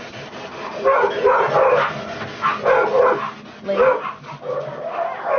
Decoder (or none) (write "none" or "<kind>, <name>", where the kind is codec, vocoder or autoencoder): none